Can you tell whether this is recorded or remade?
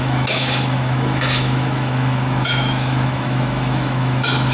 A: remade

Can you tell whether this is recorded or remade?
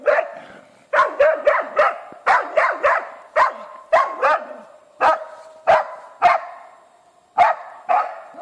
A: recorded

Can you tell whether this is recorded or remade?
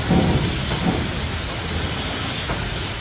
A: recorded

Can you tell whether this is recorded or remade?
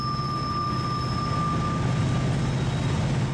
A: recorded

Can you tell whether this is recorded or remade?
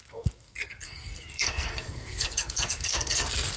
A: remade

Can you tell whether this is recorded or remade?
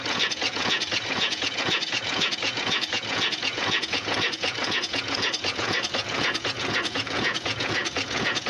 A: remade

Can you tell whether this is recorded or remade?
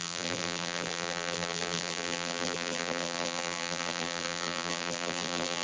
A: remade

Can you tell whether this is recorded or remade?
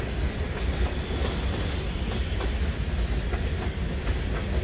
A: recorded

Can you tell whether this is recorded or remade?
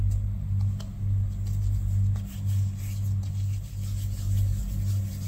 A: recorded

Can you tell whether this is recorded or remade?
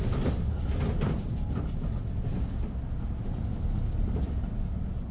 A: recorded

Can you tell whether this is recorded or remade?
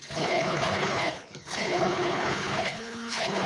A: remade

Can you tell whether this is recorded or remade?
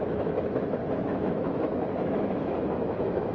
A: remade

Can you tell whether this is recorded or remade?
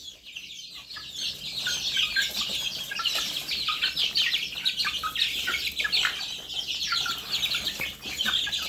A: recorded